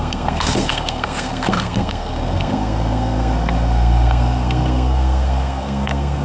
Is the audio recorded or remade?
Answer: remade